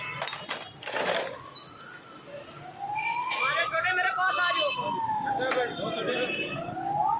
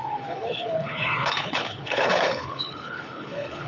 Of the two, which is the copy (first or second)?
second